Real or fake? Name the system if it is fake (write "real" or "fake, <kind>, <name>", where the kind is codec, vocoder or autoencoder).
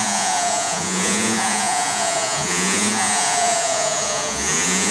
fake, vocoder, Vocos